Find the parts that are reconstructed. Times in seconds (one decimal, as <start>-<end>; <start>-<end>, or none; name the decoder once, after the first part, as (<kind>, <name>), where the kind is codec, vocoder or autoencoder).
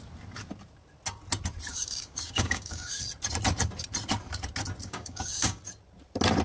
1.7-3.0 (codec, DAC); 4.8-5.6